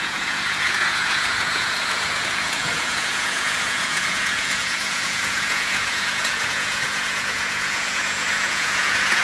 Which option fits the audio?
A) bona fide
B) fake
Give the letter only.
B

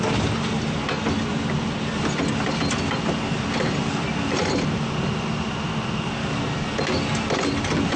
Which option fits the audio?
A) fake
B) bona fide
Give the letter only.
B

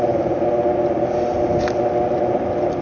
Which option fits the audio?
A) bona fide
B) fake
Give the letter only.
A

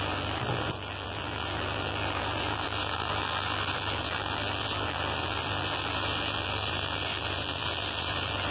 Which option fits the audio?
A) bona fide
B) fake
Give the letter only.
B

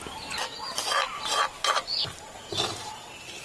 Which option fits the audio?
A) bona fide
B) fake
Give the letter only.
A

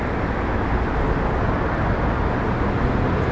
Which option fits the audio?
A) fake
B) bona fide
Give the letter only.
B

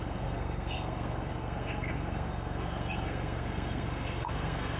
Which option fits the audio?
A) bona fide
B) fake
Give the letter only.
B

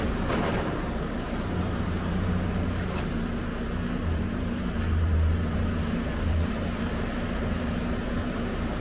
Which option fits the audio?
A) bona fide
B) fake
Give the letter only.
B